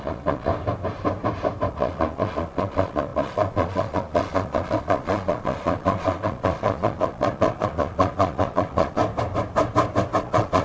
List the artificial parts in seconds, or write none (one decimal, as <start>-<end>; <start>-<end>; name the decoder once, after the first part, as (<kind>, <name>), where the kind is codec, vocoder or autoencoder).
0.0-0.5 (vocoder, Vocos); 1.7-9.0; 10.2-10.6